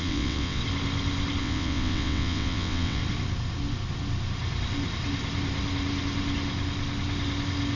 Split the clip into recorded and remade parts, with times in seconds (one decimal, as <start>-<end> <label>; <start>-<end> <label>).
0.0-0.6 remade; 0.6-1.4 recorded; 1.4-3.0 remade; 3.0-7.8 recorded